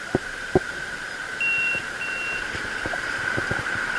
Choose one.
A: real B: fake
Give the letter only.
A